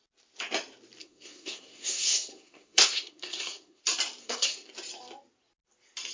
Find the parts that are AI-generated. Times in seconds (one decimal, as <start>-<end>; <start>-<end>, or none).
1.0-3.8; 4.2-4.7